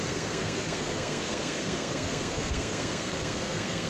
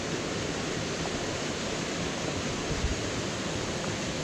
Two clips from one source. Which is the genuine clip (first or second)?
second